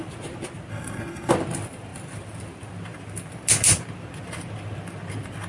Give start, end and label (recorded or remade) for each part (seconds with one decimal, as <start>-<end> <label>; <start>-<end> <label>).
0.0-0.7 recorded; 0.7-1.3 remade; 1.3-5.5 recorded